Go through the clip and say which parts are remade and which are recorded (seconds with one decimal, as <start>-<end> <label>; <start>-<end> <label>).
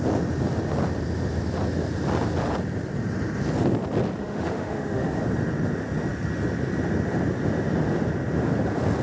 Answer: 0.0-4.2 recorded; 4.2-5.2 remade; 5.2-9.0 recorded